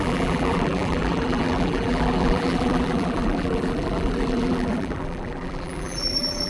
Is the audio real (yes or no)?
no